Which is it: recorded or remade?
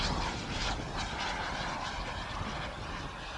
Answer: recorded